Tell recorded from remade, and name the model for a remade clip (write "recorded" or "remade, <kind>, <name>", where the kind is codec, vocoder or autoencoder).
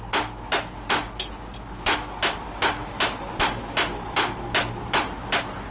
recorded